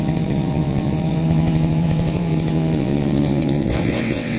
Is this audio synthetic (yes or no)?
yes